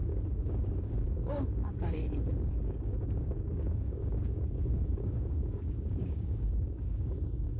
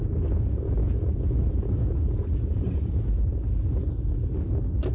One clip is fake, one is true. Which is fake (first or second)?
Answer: first